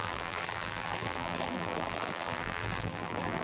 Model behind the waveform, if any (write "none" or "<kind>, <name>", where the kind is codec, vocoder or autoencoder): vocoder, BigVGAN v2